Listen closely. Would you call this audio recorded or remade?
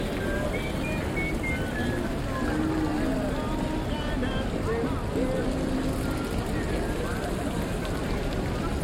recorded